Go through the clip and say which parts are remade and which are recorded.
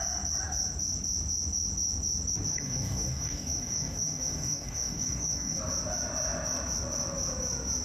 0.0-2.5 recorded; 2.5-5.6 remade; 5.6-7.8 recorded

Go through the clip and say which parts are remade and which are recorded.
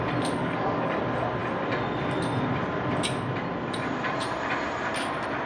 0.0-0.4 recorded; 0.4-1.0 remade; 1.0-5.5 recorded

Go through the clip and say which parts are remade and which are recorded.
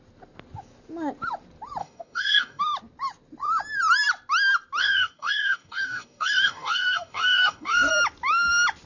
0.0-1.8 recorded; 1.8-2.6 remade; 2.6-4.8 recorded; 4.8-7.9 remade; 7.9-8.9 recorded